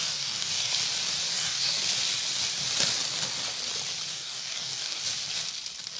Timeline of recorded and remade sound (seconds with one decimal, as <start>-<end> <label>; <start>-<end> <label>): 0.0-0.7 remade; 0.7-1.2 recorded; 1.2-1.8 remade; 1.8-4.1 recorded; 4.1-5.0 remade; 5.0-6.0 recorded